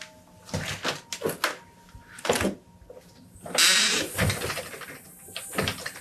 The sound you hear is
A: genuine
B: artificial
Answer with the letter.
A